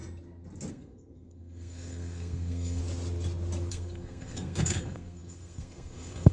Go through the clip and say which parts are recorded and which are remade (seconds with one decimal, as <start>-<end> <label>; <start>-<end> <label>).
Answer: 0.0-0.7 recorded; 0.7-2.8 remade; 2.8-3.7 recorded; 3.7-6.3 remade